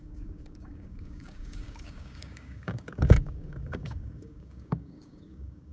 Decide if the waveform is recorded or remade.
remade